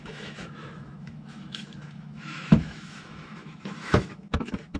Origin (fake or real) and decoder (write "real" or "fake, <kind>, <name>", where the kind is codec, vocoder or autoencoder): fake, autoencoder, DAC-VAE